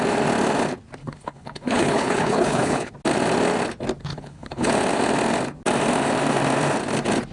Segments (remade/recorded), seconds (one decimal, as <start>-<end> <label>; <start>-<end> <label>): 0.0-1.0 recorded; 1.0-2.9 remade; 2.9-4.1 recorded; 4.1-4.7 remade; 4.7-7.3 recorded